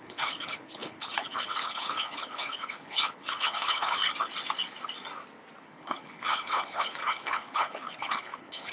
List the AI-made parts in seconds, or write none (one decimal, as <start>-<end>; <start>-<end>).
0.0-4.0; 5.6-8.7